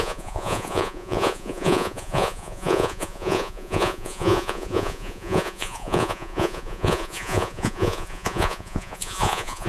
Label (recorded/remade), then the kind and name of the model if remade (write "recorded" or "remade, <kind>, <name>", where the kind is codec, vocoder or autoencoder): remade, vocoder, Vocos